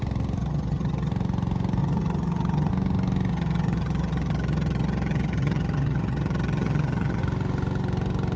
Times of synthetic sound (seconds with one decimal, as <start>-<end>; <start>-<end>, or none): 0.4-1.1; 1.8-2.7; 3.3-7.2